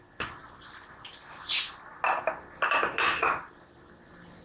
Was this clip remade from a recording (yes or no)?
no